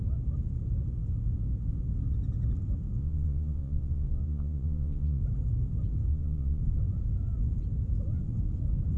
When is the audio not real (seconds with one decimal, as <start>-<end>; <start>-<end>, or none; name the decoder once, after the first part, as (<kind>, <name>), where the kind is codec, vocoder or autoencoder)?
3.0-5.2 (vocoder, Vocos); 6.1-6.6